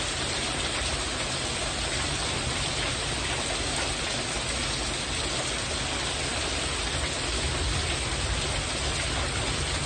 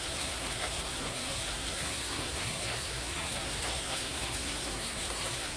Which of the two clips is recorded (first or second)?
first